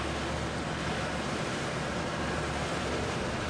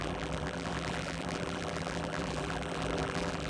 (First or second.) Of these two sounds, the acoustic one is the first